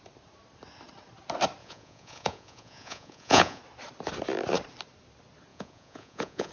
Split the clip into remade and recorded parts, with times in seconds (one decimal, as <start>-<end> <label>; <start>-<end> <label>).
0.0-1.6 recorded; 1.6-3.6 remade; 3.6-5.5 recorded; 5.5-6.5 remade